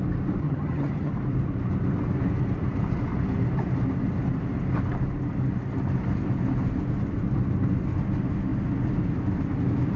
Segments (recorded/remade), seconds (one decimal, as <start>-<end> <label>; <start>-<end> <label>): 0.0-0.4 recorded; 0.4-1.1 remade; 1.1-10.0 recorded